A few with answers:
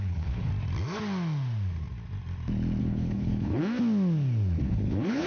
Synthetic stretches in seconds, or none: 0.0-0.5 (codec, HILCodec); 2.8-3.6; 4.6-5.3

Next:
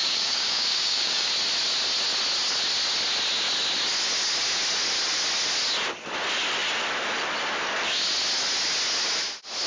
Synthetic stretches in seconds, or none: 0.0-1.3 (codec, DAC)

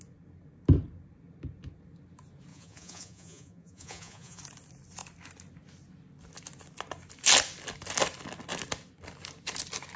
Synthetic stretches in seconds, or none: 2.5-4.4 (vocoder, Vocos)

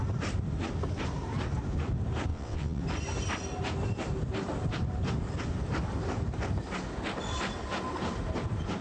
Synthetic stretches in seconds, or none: 2.3-2.8 (vocoder, WaveNeXt)

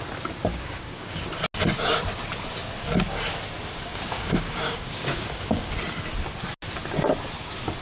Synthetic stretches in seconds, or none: 0.5-1.1 (codec, DAC); 3.9-5.7

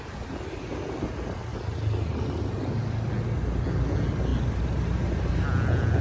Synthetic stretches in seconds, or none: none

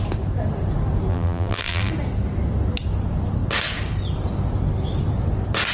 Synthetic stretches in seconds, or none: 1.1-1.9 (vocoder, BigVGAN v2)

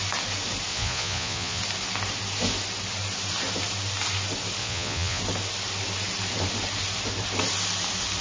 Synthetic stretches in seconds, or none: 0.7-1.6 (vocoder, Vocos); 4.6-5.2